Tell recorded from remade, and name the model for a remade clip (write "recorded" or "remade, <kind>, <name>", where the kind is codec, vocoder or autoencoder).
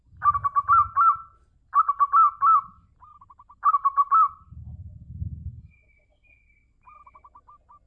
recorded